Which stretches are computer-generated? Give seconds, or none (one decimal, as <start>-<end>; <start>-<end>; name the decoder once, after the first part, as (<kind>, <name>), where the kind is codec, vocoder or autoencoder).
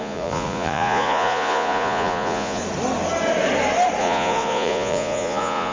0.0-2.6 (vocoder, Vocos); 4.0-5.7